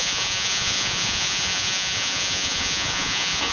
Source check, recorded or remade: remade